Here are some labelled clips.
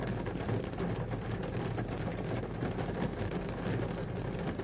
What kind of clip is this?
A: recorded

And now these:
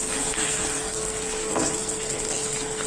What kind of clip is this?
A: remade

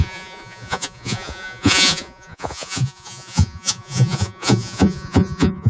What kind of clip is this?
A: remade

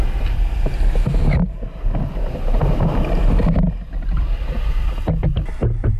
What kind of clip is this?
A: recorded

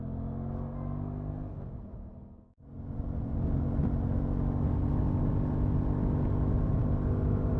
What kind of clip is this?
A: recorded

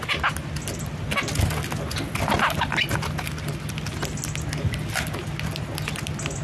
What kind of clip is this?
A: recorded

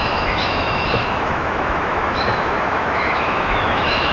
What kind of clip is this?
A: remade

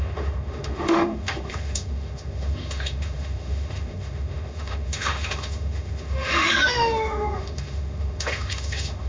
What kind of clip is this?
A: remade